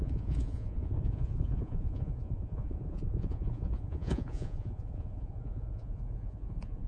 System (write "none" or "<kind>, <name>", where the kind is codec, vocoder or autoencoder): vocoder, Vocos